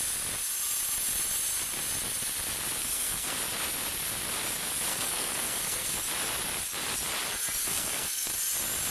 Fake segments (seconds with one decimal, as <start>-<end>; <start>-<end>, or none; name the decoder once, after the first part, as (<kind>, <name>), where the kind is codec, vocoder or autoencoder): 2.8-3.4 (codec, SNAC); 4.9-6.0; 7.6-8.3